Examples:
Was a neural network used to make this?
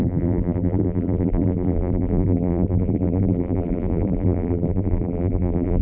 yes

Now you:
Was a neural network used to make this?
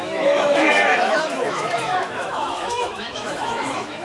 yes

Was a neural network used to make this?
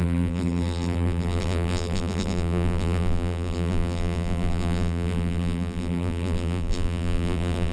yes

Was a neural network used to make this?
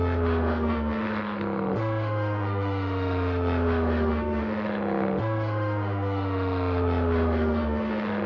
yes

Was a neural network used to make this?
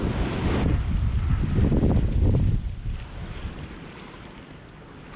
no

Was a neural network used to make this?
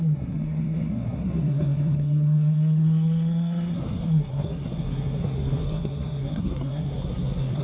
yes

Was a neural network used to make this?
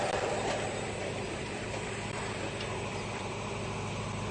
yes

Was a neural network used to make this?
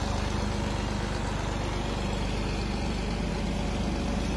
no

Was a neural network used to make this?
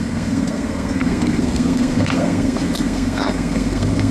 yes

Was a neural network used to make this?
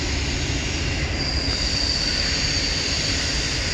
no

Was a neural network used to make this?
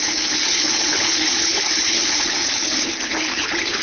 yes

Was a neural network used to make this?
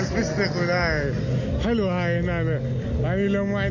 no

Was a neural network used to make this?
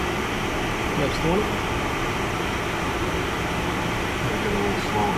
no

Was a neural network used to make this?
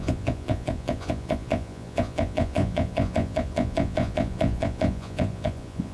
yes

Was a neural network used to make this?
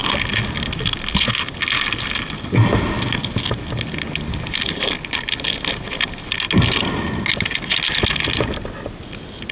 no